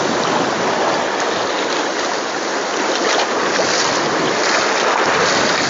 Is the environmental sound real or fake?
real